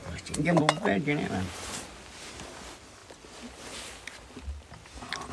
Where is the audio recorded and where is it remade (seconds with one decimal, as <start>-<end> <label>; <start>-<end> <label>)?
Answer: 0.0-0.6 remade; 0.6-5.3 recorded